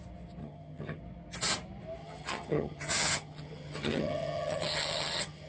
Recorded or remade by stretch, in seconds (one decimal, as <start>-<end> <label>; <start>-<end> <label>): 0.0-0.4 recorded; 0.4-1.0 remade; 1.0-2.0 recorded; 2.0-5.5 remade